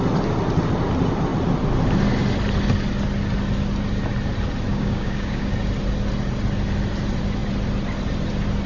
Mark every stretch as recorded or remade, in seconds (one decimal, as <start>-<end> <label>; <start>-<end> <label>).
0.0-4.7 recorded; 4.7-5.5 remade; 5.5-8.7 recorded